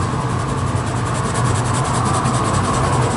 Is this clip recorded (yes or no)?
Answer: yes